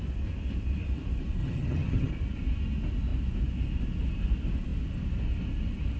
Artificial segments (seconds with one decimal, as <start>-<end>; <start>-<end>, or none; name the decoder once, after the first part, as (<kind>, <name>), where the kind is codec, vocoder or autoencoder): 1.4-2.1 (vocoder, HiFi-GAN)